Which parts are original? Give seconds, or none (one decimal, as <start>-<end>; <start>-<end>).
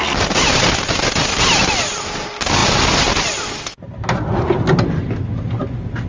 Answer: 0.0-6.1